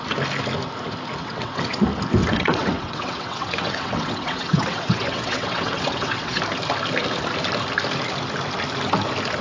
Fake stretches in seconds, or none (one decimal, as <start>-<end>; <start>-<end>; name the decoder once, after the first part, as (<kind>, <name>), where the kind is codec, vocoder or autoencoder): 1.2-1.8 (vocoder, WaveNeXt); 2.2-6.4